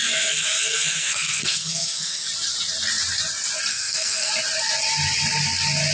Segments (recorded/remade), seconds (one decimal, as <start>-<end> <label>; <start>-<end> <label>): 0.0-2.3 remade; 2.3-3.7 recorded; 3.7-4.3 remade; 4.3-5.9 recorded

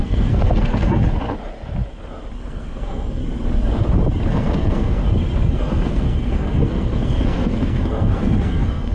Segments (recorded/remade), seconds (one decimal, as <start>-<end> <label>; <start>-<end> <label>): 0.0-1.0 remade; 1.0-2.4 recorded; 2.4-3.2 remade; 3.2-4.3 recorded; 4.3-5.0 remade; 5.0-5.5 recorded; 5.5-8.9 remade